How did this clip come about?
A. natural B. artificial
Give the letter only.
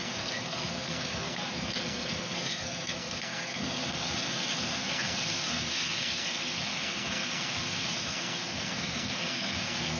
B